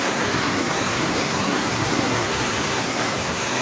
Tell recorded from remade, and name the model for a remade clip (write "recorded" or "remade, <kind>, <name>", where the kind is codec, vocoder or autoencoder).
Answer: remade, codec, SNAC